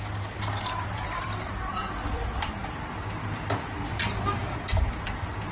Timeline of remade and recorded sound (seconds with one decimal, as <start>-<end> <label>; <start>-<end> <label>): 0.0-0.6 recorded; 0.6-5.5 remade